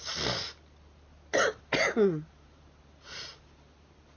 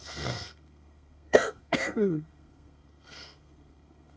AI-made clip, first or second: second